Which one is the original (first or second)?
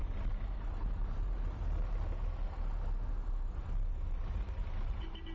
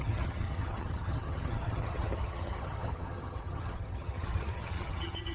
first